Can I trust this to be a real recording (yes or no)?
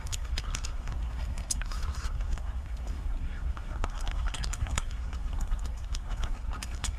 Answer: no